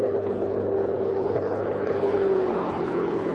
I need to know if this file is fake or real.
fake